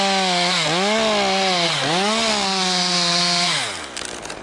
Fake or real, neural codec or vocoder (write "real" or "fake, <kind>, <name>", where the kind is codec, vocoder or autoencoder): real